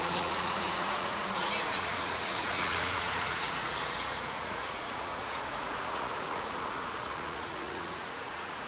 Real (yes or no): no